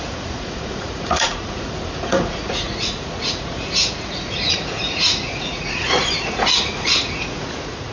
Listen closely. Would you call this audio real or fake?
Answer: fake